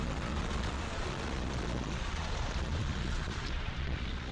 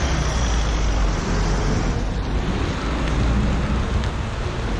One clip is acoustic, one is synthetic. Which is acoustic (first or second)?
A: second